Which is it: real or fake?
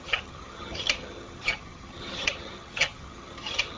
fake